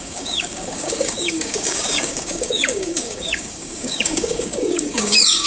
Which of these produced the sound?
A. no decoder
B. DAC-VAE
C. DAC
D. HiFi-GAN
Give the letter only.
C